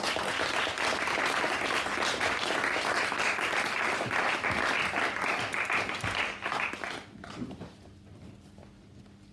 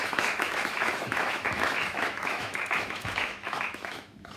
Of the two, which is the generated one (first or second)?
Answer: second